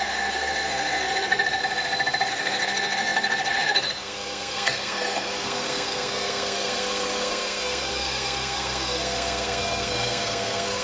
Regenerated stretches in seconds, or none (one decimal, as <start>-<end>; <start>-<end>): 0.0-1.6; 2.3-10.8